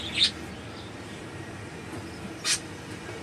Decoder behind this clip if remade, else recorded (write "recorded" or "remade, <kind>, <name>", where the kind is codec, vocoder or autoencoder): recorded